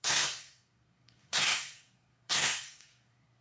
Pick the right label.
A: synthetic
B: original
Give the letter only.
A